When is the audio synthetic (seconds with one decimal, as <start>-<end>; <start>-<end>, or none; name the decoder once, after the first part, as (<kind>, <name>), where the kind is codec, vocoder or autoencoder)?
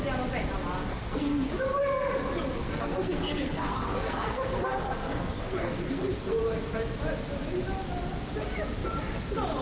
0.9-1.5 (codec, SNAC); 2.6-6.4